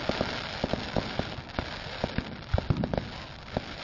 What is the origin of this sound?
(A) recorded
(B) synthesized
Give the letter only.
A